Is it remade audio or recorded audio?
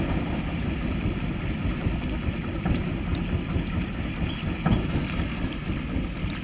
recorded